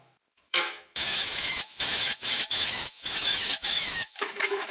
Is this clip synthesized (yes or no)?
yes